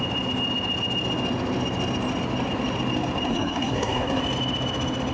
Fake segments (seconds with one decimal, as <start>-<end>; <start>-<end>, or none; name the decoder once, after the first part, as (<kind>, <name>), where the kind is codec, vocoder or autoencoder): 3.3-4.2 (codec, SNAC)